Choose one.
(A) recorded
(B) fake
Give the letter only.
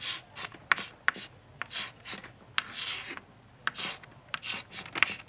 A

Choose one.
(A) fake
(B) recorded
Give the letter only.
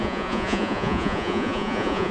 A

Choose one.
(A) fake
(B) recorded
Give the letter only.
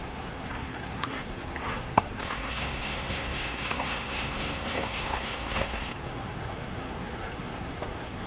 A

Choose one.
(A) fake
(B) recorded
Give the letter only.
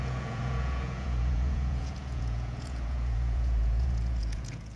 A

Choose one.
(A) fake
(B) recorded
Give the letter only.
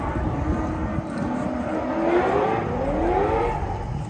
B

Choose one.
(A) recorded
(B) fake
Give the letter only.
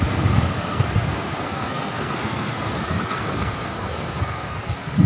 B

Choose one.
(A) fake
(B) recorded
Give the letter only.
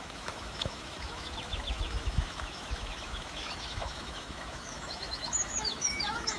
A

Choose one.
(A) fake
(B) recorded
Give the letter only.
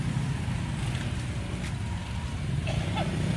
B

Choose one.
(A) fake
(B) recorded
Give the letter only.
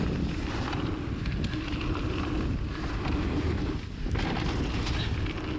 B